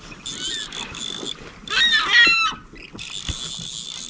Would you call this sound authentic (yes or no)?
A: yes